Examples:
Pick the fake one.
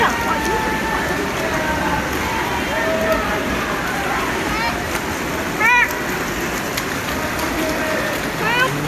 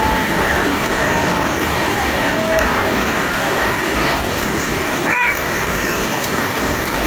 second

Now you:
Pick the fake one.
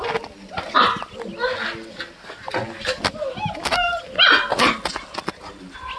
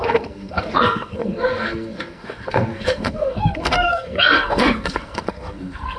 second